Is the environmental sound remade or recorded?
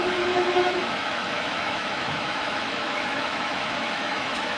remade